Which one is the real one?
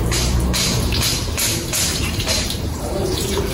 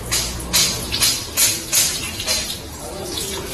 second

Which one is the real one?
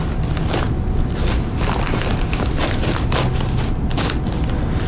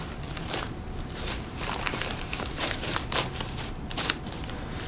first